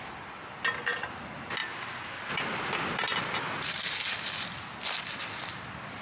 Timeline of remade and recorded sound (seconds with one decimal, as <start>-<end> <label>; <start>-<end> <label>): 0.0-6.0 recorded